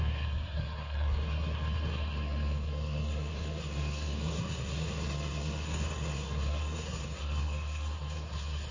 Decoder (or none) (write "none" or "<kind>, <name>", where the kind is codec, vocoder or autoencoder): codec, SNAC